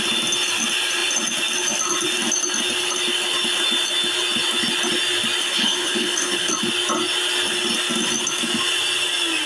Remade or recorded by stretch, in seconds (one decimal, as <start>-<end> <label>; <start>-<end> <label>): 0.0-5.4 recorded; 5.4-6.5 remade; 6.5-9.5 recorded